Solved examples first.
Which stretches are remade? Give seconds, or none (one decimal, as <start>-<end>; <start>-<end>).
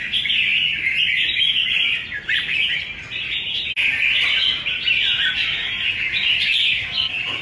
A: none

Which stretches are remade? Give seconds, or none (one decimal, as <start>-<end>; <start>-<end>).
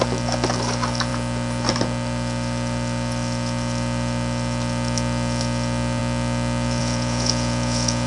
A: 6.8-8.1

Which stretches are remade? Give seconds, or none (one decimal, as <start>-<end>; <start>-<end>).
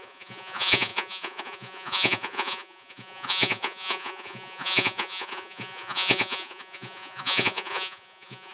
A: 0.0-8.5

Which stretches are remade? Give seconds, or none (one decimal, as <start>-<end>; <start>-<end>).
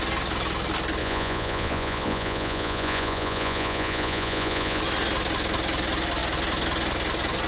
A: 1.0-4.8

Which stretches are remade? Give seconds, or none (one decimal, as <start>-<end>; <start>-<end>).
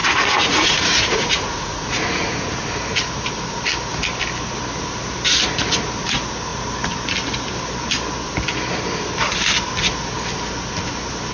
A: 0.0-2.6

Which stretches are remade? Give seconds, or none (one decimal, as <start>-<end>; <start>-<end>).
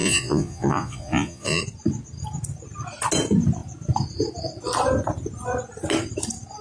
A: 0.0-1.6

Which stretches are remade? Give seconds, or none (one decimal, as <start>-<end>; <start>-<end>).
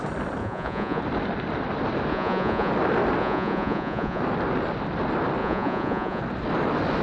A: 0.4-1.0; 2.1-2.7; 3.2-4.2; 5.4-6.2